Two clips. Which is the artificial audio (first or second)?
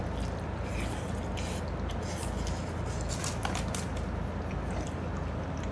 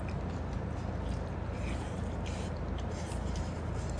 second